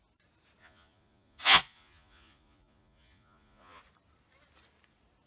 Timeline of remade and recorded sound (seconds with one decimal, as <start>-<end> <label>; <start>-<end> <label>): 0.0-0.6 recorded; 0.6-3.8 remade; 3.8-5.3 recorded